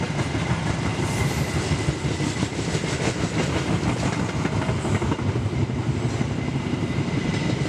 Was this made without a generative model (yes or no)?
yes